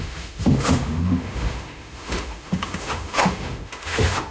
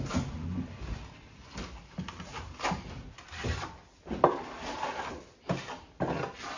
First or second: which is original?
second